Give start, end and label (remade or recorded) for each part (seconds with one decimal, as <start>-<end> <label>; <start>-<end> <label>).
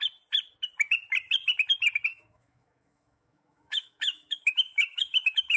0.0-2.1 recorded; 2.1-5.6 remade